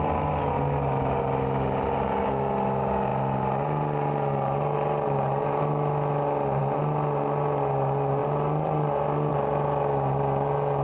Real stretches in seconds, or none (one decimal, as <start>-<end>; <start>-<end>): 0.0-10.8